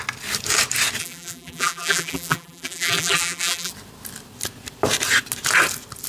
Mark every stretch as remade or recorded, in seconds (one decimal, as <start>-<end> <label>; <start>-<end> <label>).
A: 0.0-1.0 recorded; 1.0-3.7 remade; 3.7-6.1 recorded